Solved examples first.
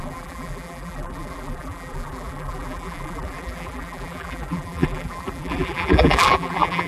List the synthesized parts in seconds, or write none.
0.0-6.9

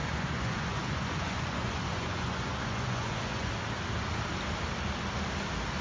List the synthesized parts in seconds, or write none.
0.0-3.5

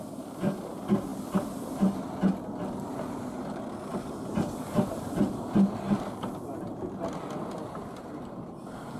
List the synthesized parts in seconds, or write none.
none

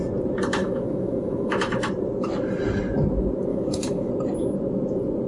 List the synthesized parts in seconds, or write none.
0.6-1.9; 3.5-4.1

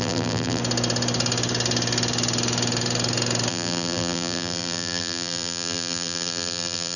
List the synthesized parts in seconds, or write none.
0.0-0.6; 3.5-7.0

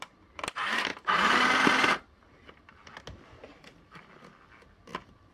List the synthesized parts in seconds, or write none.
none

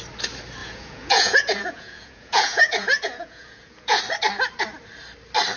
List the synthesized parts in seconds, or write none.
0.6-4.0

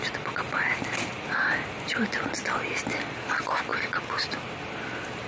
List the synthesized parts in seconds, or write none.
3.7-4.5